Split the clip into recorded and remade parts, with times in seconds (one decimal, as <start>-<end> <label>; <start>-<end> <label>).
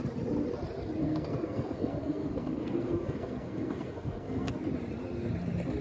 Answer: 0.0-1.0 recorded; 1.0-4.5 remade; 4.5-5.8 recorded